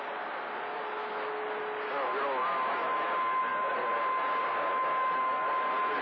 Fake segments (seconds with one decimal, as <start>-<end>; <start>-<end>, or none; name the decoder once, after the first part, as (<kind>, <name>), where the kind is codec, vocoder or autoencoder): none